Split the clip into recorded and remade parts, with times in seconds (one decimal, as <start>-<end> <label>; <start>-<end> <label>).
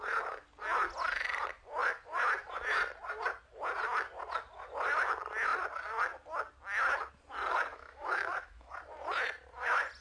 0.0-7.7 recorded; 7.7-8.7 remade; 8.7-10.0 recorded